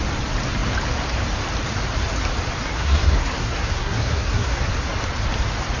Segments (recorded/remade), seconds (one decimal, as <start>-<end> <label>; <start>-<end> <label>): 0.0-2.6 recorded; 2.6-4.7 remade; 4.7-5.8 recorded